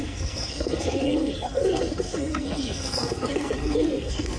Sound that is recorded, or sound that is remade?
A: remade